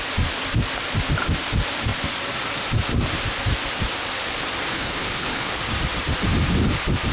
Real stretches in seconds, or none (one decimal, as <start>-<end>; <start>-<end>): 0.0-4.7; 5.6-7.1